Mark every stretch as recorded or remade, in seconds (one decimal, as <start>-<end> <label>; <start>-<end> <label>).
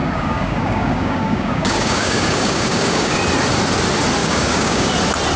0.0-3.2 remade; 3.2-4.2 recorded; 4.2-4.9 remade; 4.9-5.4 recorded